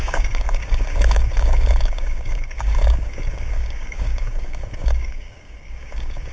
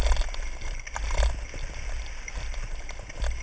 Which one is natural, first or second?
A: second